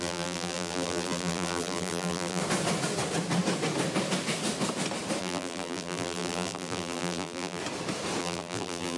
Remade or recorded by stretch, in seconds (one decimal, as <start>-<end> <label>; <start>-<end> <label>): 0.0-2.4 remade; 2.4-5.2 recorded; 5.2-7.6 remade; 7.6-8.2 recorded; 8.2-9.0 remade

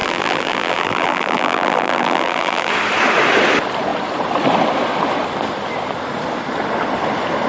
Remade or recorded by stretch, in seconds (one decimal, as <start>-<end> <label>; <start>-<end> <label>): 0.0-2.7 remade; 2.7-7.5 recorded

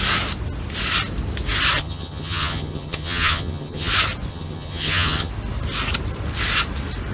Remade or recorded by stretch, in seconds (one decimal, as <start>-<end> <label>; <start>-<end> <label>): 0.0-1.8 recorded; 1.8-3.9 remade; 3.9-4.3 recorded; 4.3-5.3 remade; 5.3-7.1 recorded

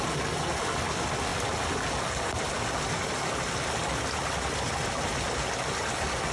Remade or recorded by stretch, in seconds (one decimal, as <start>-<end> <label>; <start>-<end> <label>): 0.0-6.3 recorded